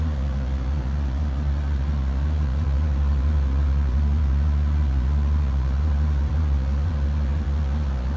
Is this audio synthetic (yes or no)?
yes